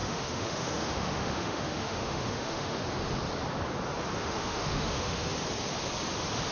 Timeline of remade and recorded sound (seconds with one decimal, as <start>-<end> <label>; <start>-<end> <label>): 0.0-2.8 remade; 2.8-4.2 recorded; 4.2-5.3 remade; 5.3-6.5 recorded